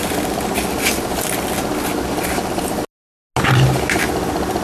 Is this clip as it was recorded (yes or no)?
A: yes